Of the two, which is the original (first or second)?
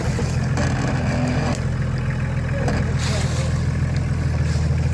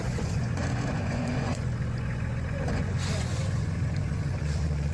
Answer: first